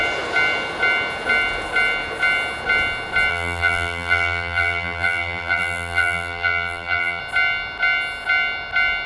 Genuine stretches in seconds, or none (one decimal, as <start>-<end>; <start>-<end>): 0.0-3.3; 7.2-9.1